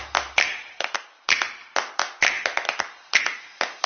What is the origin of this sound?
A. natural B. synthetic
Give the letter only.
A